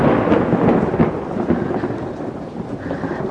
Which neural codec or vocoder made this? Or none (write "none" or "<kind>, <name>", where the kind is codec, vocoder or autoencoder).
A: none